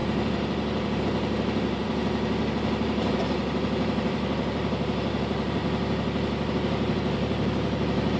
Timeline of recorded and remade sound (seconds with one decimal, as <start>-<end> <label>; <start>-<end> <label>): 0.0-5.6 remade; 5.6-6.5 recorded; 6.5-8.2 remade